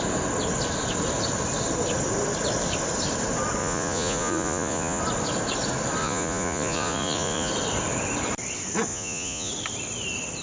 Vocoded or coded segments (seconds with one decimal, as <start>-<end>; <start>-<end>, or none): 3.6-5.0; 6.0-7.5; 8.9-9.5